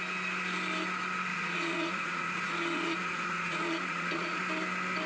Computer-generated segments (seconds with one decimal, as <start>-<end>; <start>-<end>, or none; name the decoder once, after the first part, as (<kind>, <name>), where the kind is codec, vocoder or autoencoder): 1.3-4.4 (vocoder, Vocos)